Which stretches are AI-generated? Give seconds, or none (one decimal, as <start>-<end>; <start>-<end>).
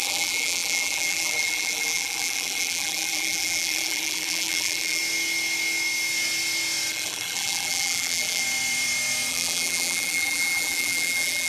0.0-5.0; 6.9-8.4; 9.3-11.5